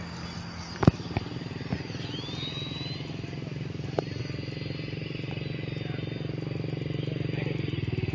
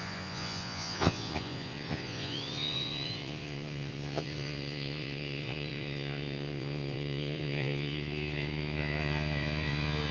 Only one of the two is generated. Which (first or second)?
second